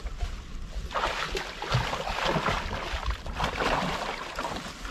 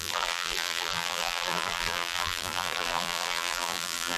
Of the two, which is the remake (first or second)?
second